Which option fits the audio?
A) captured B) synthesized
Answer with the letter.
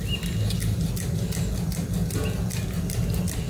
A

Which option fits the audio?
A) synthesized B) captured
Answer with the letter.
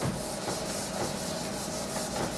B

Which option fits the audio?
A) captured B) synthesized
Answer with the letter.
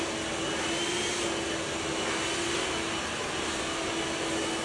A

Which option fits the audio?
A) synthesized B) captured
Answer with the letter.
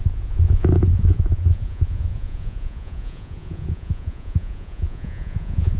A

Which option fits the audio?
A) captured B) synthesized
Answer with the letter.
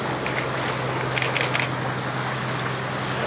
A